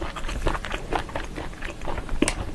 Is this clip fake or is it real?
real